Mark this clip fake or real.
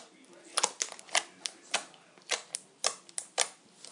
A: real